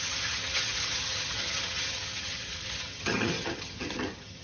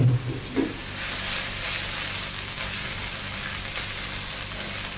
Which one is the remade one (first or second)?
first